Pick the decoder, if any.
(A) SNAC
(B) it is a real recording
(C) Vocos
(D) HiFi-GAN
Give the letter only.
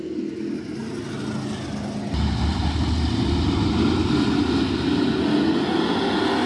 B